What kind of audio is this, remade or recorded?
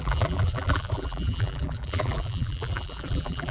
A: remade